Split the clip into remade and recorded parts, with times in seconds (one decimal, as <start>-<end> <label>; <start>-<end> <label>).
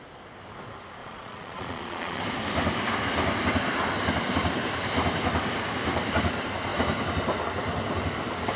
0.0-1.0 recorded; 1.0-2.2 remade; 2.2-8.6 recorded